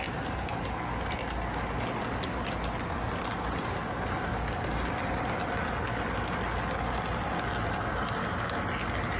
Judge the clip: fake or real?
real